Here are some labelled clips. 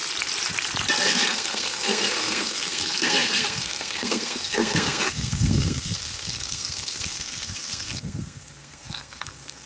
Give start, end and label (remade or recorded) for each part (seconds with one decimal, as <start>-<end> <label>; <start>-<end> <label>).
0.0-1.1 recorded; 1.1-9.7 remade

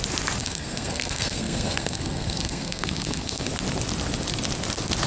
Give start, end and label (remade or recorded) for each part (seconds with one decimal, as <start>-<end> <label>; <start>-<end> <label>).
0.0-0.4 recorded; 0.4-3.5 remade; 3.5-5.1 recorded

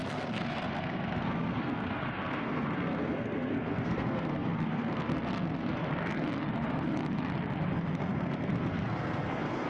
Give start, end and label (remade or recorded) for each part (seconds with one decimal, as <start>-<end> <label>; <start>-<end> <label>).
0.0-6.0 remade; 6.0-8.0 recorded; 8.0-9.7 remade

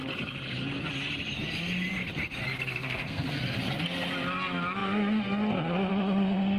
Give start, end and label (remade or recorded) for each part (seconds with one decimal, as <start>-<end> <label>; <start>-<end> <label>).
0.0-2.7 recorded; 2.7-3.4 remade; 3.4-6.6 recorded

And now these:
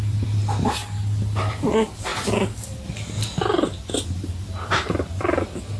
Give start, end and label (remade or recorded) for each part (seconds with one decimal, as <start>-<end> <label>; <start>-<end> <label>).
0.0-5.8 recorded

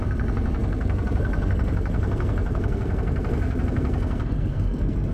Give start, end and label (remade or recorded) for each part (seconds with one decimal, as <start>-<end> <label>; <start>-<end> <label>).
0.0-5.1 remade

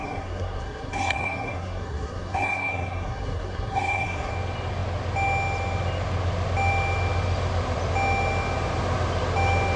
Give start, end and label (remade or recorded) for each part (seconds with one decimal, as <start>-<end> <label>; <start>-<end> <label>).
0.0-4.3 remade; 4.3-9.8 recorded

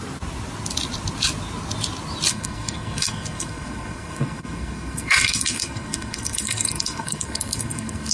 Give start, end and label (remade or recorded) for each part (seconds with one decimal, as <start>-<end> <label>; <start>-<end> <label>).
0.0-2.3 recorded; 2.3-8.1 remade